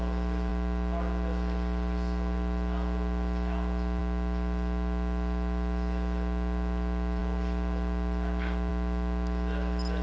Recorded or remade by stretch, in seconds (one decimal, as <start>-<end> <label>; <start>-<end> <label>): 0.0-10.0 recorded